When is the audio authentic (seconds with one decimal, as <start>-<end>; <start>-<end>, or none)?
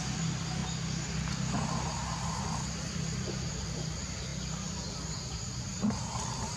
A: 0.0-6.6